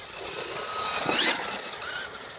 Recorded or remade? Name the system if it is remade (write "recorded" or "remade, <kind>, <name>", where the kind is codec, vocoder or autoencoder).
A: recorded